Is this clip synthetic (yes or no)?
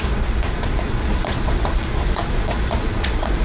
yes